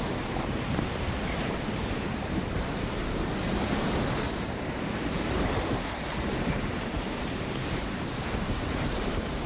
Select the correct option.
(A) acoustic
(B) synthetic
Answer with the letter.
B